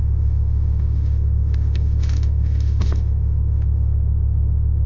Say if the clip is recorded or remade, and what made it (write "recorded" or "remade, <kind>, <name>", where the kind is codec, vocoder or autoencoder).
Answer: remade, autoencoder, DAC-VAE